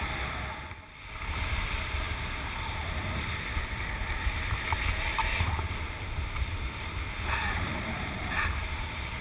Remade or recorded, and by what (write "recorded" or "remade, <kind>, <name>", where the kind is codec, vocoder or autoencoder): recorded